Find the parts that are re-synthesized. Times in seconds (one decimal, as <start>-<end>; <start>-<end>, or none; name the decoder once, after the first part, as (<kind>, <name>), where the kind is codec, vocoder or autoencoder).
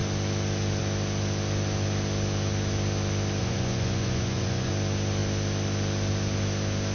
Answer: 3.4-4.7 (vocoder, Vocos)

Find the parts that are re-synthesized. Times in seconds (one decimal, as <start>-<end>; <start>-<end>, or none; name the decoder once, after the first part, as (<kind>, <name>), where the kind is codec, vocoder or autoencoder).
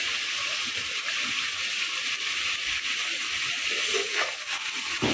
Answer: none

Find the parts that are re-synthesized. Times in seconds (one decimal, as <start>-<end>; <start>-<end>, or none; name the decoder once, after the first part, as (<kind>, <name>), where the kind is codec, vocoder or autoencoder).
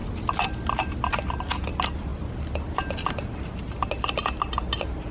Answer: none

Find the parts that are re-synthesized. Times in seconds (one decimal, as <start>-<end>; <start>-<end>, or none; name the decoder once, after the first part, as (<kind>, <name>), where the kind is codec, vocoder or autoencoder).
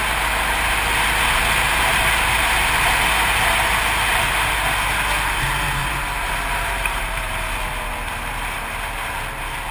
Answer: 5.8-7.5 (vocoder, BigVGAN v2)